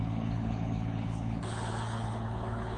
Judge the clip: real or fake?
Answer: fake